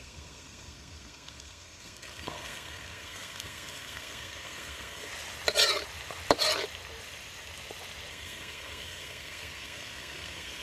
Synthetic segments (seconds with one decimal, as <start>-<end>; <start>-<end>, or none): 0.0-5.1; 8.1-10.6